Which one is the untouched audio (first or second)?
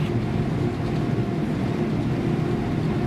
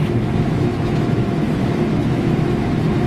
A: first